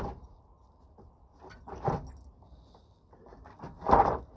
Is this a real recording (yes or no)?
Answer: yes